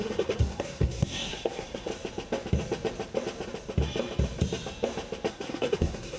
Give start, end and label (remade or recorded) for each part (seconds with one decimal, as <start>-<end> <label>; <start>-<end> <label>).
0.0-1.9 remade; 1.9-5.3 recorded; 5.3-6.2 remade